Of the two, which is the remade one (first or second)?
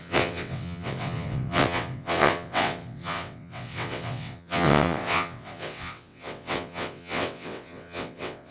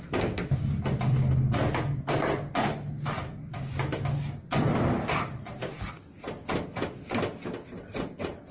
first